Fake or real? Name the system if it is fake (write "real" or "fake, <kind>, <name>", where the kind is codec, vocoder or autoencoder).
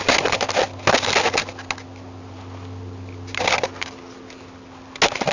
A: real